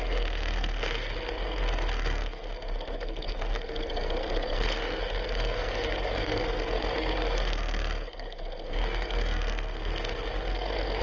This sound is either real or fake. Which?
fake